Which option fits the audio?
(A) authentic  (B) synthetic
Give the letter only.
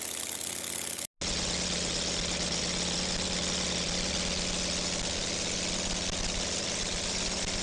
A